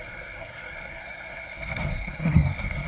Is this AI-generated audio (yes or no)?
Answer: yes